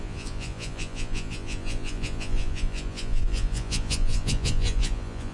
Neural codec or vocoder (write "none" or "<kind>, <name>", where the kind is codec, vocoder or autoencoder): vocoder, Vocos